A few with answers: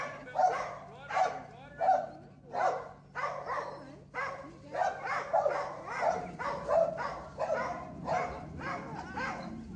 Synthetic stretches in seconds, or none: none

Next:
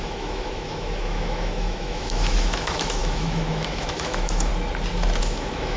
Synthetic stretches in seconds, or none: 0.0-4.5 (autoencoder, DAC-VAE); 5.2-5.8

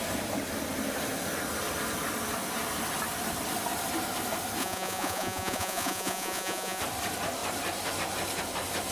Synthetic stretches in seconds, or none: 4.6-6.8 (vocoder, Vocos)

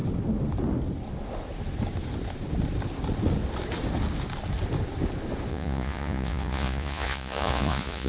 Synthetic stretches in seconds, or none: 5.5-8.1 (vocoder, Vocos)

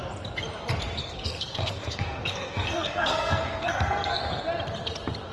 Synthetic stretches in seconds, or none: 1.0-4.2 (codec, SNAC)